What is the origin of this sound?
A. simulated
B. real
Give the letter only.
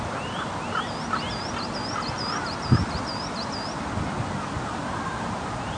B